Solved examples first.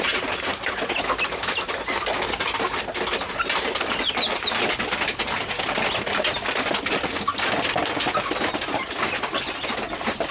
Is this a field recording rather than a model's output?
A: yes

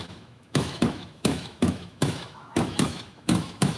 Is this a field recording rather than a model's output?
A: no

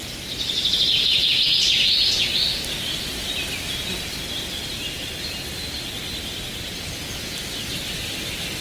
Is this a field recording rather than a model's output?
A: yes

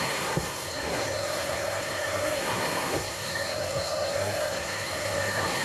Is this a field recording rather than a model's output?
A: no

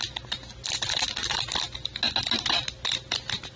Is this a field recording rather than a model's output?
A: yes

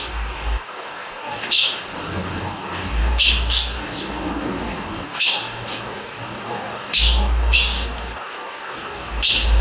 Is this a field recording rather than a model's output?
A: no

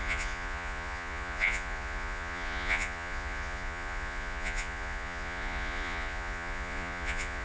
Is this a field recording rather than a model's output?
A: no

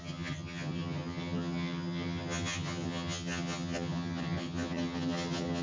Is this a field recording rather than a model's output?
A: no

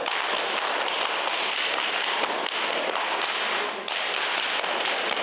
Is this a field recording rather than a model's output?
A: yes